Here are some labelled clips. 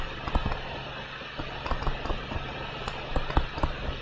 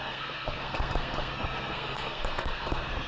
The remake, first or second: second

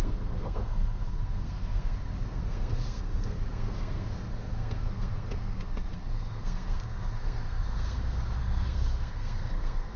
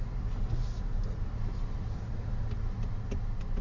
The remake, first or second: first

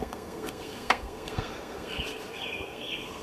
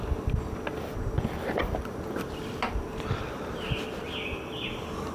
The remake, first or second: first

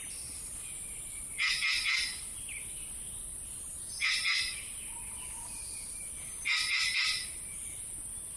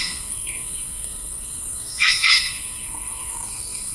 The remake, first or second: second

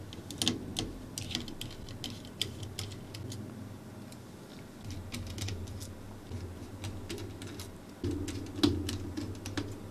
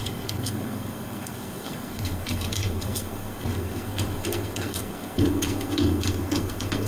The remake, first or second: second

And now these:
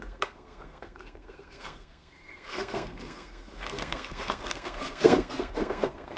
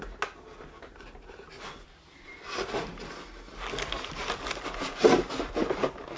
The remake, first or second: first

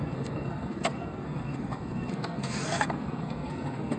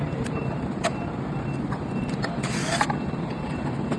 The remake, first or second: first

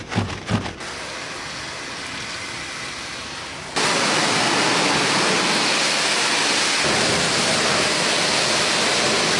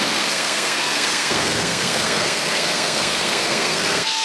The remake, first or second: second